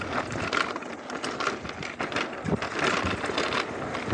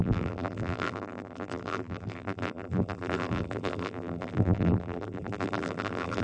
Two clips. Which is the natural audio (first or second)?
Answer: first